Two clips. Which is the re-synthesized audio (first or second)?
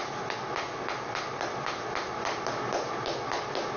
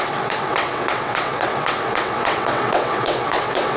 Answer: second